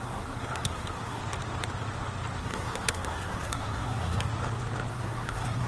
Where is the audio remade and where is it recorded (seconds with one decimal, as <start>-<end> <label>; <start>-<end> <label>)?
0.0-1.2 remade; 1.2-2.4 recorded; 2.4-4.3 remade; 4.3-4.9 recorded; 4.9-5.7 remade

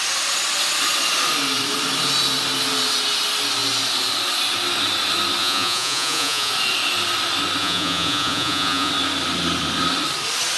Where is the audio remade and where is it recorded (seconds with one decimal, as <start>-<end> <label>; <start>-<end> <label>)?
0.0-5.4 recorded; 5.4-6.5 remade; 6.5-7.6 recorded; 7.6-8.9 remade; 8.9-10.6 recorded

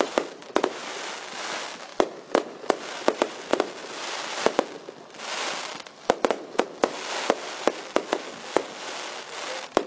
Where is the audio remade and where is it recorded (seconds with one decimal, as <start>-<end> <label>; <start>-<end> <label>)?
0.0-9.9 recorded

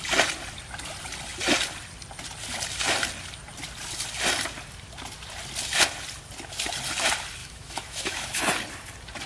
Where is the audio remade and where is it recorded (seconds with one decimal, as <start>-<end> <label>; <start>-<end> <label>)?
0.0-7.4 recorded; 7.4-8.4 remade; 8.4-9.3 recorded

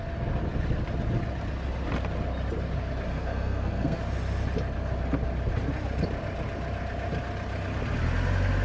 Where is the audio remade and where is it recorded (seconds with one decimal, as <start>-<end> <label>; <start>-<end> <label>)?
0.0-3.1 recorded; 3.1-4.0 remade; 4.0-8.6 recorded

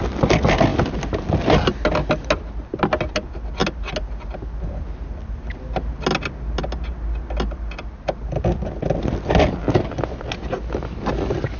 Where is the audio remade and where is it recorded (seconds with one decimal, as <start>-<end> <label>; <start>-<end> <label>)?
0.0-11.6 recorded

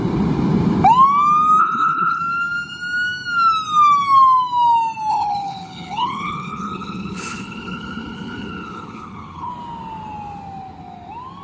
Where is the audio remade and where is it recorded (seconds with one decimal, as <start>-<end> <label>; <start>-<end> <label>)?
0.0-1.6 recorded; 1.6-2.2 remade; 2.2-5.1 recorded; 5.1-9.5 remade; 9.5-11.4 recorded